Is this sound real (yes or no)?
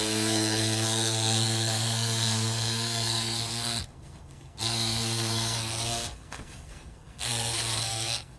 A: no